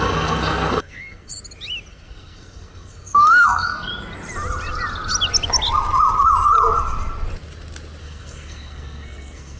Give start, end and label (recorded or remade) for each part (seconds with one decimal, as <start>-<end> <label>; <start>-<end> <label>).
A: 0.0-1.3 remade; 1.3-1.9 recorded; 1.9-3.9 remade; 3.9-8.0 recorded; 8.0-9.6 remade